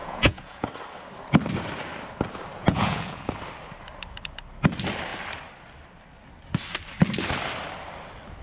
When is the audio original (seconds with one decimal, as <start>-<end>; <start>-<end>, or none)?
0.7-2.6; 3.3-8.4